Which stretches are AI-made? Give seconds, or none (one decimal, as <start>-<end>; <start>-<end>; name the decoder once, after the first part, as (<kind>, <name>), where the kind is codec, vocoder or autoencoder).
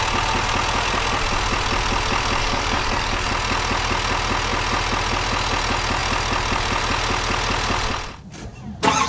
2.4-3.3 (codec, DAC)